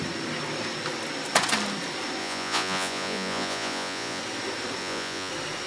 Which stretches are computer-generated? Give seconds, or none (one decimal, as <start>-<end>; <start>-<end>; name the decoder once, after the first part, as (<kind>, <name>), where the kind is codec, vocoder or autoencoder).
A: 2.2-4.2 (vocoder, Vocos); 4.8-5.3